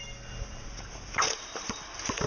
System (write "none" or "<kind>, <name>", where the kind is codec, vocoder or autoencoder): none